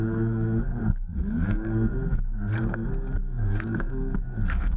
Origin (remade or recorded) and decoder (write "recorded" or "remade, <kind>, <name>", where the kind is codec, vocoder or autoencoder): remade, codec, SNAC